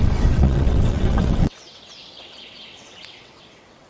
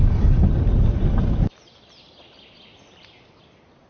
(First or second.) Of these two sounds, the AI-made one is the first